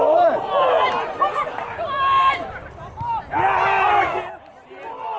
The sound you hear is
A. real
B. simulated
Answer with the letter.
A